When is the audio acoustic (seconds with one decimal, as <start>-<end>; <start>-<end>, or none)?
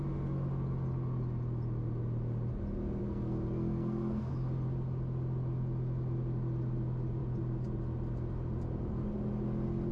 0.0-3.0; 4.3-9.9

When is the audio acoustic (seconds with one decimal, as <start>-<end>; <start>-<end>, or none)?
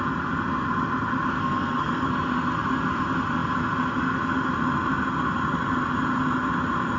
0.0-1.4; 2.1-7.0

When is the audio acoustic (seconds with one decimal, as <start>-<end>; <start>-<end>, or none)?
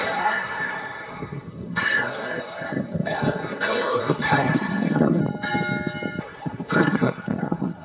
5.2-6.2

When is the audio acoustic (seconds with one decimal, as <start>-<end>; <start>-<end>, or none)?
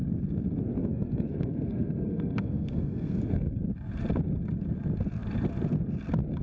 0.0-0.8; 3.6-6.4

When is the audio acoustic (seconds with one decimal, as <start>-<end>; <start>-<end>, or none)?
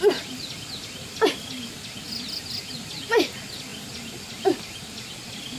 0.0-5.6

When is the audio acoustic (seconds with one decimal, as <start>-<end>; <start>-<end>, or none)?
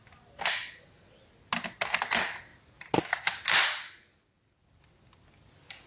0.0-5.9